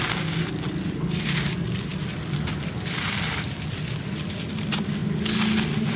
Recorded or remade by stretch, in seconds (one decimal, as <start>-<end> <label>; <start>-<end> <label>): 0.0-6.0 recorded